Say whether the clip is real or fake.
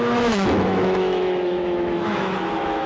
fake